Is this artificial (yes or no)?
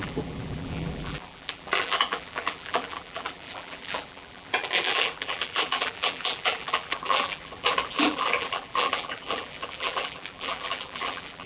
yes